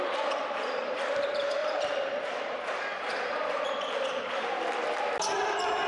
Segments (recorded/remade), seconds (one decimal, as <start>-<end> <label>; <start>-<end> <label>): 0.0-1.6 recorded; 1.6-5.1 remade; 5.1-5.9 recorded